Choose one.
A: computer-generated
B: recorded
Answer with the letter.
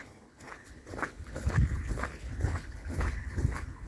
A